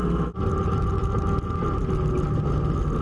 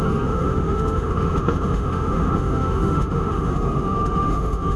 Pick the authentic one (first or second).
first